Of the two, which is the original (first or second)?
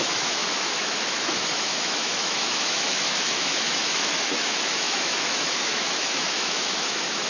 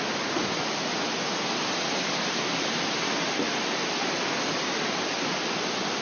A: second